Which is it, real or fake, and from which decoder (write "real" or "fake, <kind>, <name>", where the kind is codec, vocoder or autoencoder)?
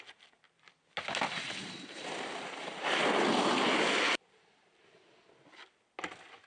real